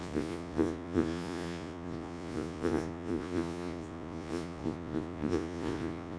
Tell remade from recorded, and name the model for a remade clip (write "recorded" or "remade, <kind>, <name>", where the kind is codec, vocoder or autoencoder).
remade, vocoder, Vocos